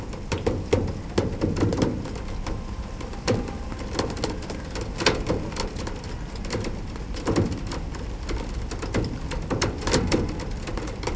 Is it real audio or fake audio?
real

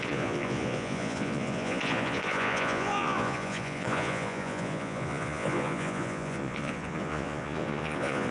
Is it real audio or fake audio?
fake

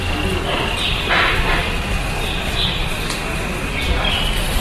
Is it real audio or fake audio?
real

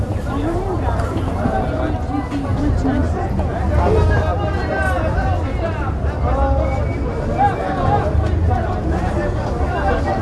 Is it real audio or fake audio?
real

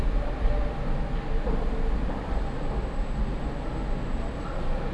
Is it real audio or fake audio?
real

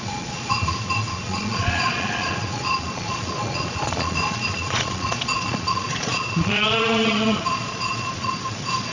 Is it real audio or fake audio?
fake